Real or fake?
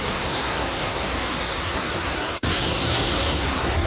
fake